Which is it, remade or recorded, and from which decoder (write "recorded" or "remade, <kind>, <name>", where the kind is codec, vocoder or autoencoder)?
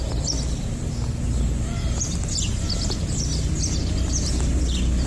recorded